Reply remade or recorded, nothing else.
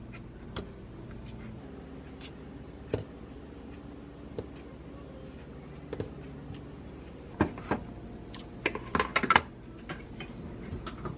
recorded